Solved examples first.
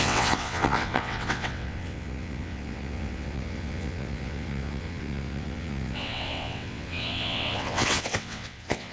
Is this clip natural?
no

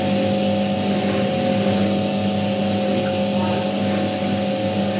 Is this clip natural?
yes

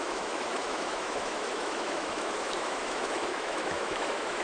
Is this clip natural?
no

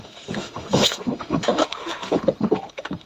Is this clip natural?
no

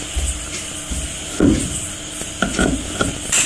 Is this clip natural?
yes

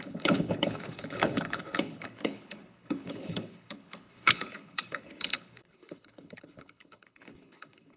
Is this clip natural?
no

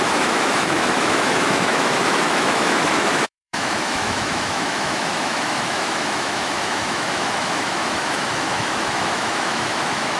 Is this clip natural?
no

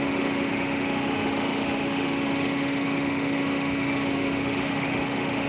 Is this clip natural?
no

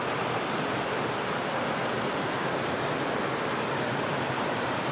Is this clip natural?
yes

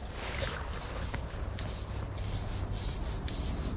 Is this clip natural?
yes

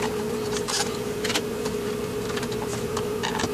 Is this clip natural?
no